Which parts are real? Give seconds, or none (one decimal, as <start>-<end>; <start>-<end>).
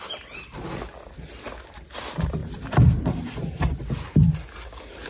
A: 0.0-2.4; 3.8-5.1